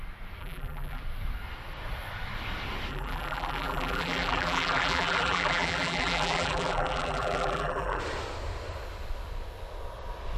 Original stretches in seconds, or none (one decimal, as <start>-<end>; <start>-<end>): 0.0-0.4; 1.0-2.9; 8.0-10.4